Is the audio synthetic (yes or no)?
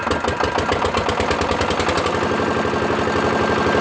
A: no